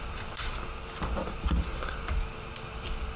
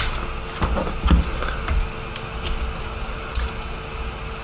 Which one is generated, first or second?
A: first